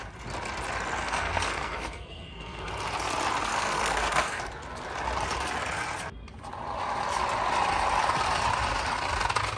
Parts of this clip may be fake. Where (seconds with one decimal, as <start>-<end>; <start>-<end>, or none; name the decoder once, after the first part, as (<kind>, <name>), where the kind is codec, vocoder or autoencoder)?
1.0-2.7 (codec, SNAC); 3.5-4.4

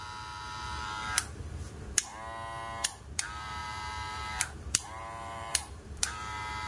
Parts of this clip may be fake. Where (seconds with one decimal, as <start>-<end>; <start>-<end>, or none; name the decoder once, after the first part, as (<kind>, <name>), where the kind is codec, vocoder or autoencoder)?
0.0-2.1 (vocoder, BigVGAN v2); 3.0-6.7

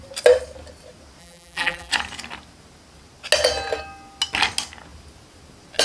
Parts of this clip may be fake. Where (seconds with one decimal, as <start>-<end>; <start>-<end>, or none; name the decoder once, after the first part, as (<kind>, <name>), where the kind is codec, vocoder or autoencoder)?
1.2-1.9 (vocoder, BigVGAN v2)

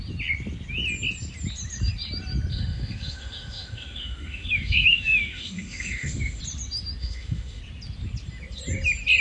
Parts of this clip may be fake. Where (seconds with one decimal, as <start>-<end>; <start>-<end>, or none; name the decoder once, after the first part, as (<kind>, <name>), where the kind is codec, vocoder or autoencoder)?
2.5-6.4 (autoencoder, DAC-VAE); 7.0-7.6